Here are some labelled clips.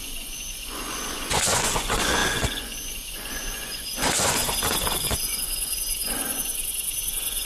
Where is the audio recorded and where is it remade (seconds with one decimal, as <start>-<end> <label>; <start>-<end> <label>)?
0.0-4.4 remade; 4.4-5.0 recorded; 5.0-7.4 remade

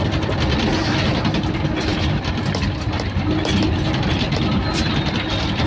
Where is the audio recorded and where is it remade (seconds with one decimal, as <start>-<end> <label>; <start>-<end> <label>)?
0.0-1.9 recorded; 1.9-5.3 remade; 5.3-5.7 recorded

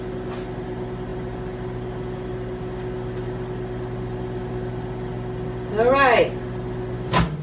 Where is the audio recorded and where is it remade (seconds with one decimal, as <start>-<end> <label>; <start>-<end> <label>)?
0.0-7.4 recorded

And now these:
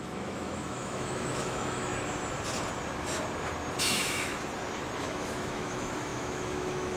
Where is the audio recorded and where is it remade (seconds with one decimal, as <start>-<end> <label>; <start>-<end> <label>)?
0.0-1.9 remade; 1.9-3.8 recorded; 3.8-4.3 remade; 4.3-5.0 recorded; 5.0-7.0 remade

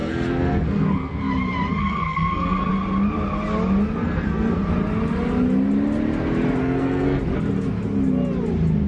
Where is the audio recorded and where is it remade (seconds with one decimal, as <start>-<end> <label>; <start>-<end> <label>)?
0.0-1.3 remade; 1.3-1.8 recorded; 1.8-2.7 remade; 2.7-4.0 recorded; 4.0-4.7 remade; 4.7-6.6 recorded; 6.6-7.2 remade; 7.2-8.9 recorded